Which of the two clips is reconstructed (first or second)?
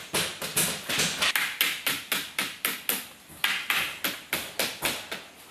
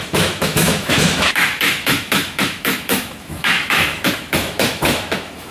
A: second